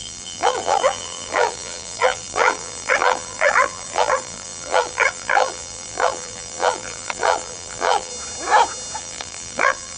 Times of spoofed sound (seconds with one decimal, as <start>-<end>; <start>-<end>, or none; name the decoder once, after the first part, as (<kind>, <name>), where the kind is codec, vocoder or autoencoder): 0.0-8.1 (vocoder, BigVGAN v2); 9.0-10.0